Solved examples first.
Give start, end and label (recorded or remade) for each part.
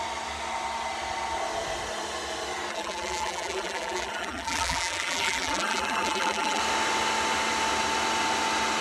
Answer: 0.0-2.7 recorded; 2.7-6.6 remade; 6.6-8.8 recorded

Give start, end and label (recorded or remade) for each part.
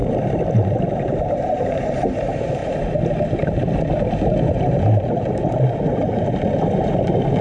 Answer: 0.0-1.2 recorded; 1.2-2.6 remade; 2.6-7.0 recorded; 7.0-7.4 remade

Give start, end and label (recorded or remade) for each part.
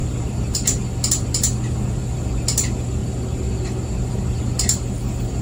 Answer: 0.0-5.4 recorded